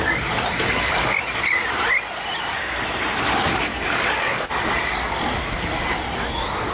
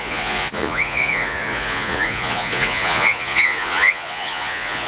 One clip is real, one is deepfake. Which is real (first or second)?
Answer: first